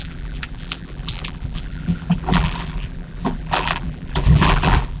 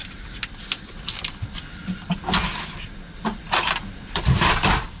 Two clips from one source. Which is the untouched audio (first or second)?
second